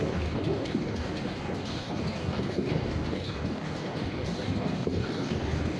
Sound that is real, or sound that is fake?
fake